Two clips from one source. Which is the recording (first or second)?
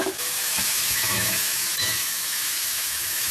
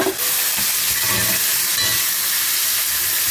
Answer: second